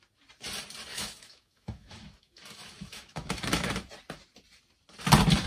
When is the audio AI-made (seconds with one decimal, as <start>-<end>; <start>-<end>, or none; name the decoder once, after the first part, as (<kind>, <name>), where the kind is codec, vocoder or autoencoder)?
0.9-3.7 (autoencoder, DAC-VAE)